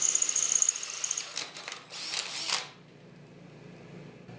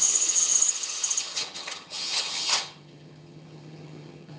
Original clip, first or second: first